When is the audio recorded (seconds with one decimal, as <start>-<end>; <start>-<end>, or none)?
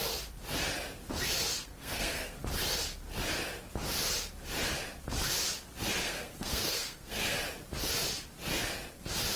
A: 0.0-1.5; 2.4-6.0; 7.4-9.4